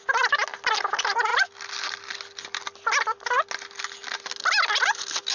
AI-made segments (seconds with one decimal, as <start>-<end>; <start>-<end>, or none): none